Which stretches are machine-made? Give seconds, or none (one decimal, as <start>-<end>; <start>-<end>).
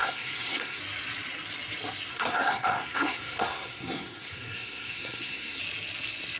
0.0-0.8; 2.1-5.6